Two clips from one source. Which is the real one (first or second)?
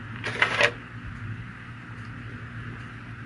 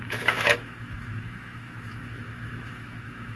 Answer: first